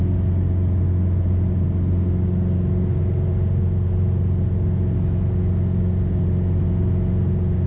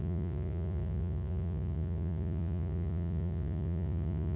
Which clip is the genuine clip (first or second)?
first